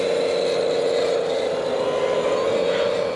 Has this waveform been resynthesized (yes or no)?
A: no